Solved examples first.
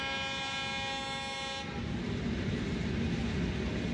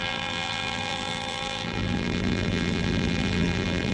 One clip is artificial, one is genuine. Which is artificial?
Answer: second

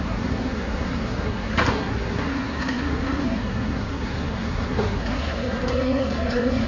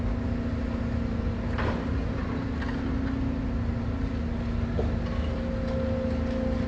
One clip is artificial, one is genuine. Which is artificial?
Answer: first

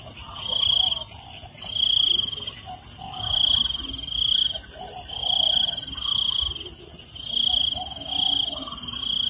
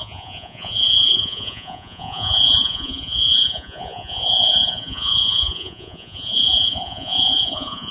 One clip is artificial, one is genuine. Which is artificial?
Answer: second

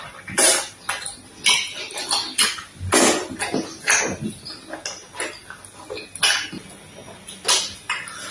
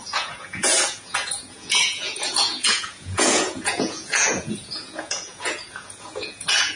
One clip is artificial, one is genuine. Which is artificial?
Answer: second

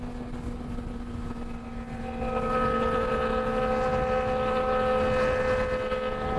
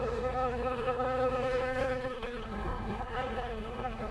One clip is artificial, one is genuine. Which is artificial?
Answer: second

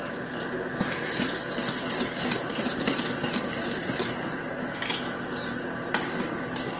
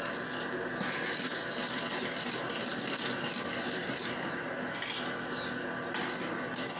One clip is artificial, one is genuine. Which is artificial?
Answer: first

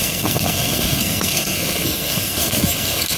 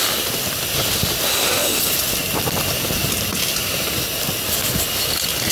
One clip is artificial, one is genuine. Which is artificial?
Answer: first